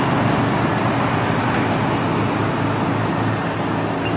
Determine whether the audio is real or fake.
real